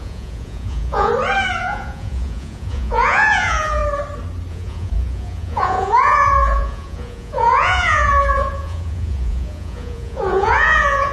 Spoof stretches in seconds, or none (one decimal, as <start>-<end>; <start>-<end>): 0.0-1.1; 1.6-3.8; 4.5-11.1